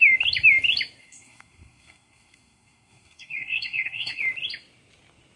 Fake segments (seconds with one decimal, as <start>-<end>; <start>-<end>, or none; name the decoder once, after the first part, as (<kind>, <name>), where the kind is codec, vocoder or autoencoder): 1.0-4.2 (codec, SNAC)